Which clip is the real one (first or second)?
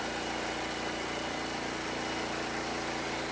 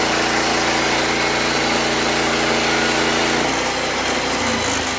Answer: second